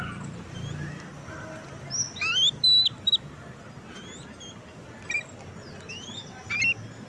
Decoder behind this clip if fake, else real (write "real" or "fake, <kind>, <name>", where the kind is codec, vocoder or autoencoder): real